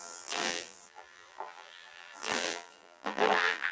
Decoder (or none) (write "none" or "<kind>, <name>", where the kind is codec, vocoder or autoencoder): vocoder, BigVGAN v2